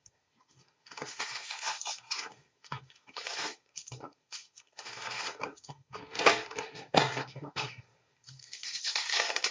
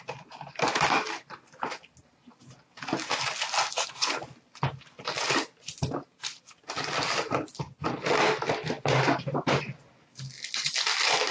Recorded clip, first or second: second